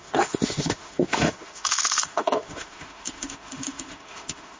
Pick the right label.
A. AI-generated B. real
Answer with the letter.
A